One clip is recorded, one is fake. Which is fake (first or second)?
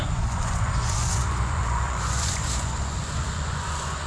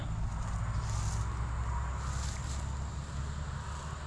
first